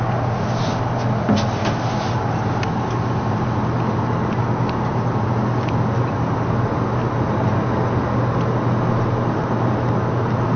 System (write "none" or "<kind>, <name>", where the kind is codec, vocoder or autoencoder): none